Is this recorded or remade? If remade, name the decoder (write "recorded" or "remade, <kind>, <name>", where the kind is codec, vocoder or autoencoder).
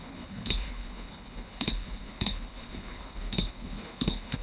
remade, codec, HILCodec